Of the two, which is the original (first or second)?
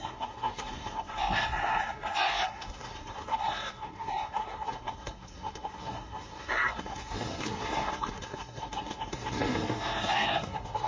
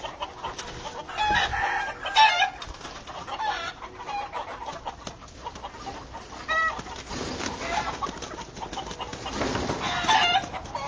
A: second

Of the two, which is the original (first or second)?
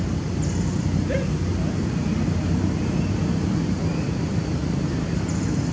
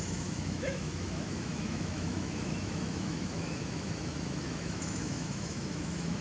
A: first